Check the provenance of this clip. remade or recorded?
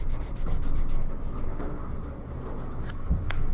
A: recorded